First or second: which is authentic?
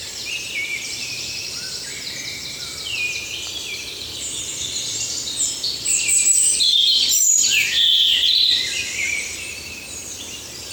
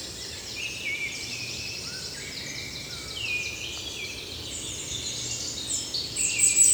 second